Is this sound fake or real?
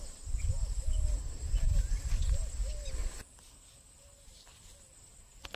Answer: real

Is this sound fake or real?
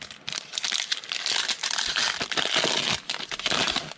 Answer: real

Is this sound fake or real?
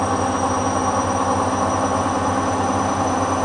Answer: real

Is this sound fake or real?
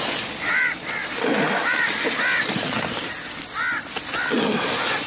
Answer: real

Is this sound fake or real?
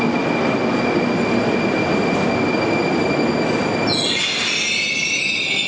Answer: real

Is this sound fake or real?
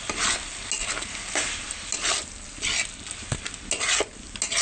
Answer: real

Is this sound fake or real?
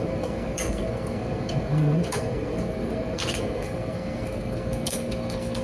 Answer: fake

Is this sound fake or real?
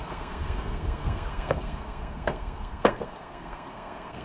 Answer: fake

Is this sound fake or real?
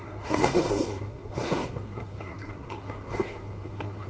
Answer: fake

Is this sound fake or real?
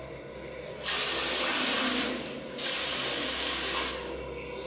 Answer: real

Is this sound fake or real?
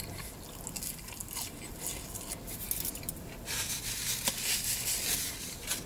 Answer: real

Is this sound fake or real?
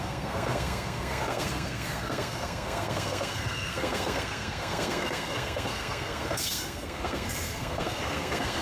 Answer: fake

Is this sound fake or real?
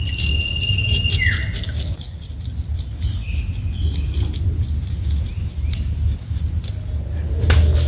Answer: real